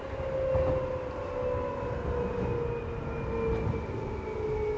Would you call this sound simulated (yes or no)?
no